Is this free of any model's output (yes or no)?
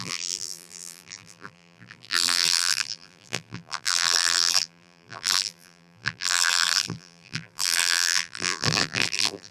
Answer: no